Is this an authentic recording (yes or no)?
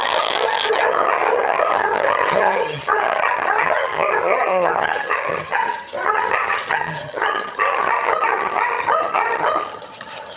no